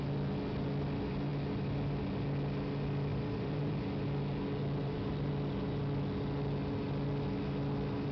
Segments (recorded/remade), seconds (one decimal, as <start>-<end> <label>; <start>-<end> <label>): 0.0-3.1 recorded; 3.1-3.8 remade; 3.8-4.8 recorded; 4.8-5.3 remade; 5.3-8.1 recorded